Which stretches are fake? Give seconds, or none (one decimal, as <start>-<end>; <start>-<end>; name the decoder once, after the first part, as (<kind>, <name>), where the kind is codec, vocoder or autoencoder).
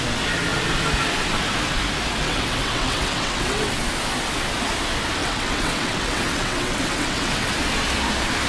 2.2-3.7 (vocoder, WaveNeXt); 5.2-7.5